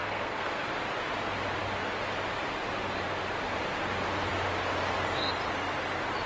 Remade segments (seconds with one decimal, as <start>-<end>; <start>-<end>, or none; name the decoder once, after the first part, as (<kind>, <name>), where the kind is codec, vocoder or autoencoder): 0.0-0.7 (codec, SNAC)